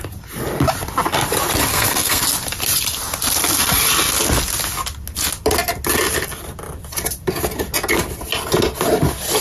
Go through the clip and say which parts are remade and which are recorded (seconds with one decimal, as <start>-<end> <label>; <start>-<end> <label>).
0.0-1.7 recorded; 1.7-2.2 remade; 2.2-9.4 recorded